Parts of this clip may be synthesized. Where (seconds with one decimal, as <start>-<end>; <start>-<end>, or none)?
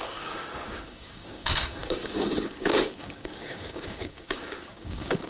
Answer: 0.0-5.3